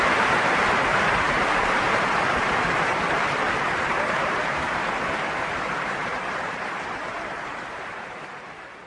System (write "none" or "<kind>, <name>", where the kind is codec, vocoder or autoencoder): vocoder, BigVGAN v2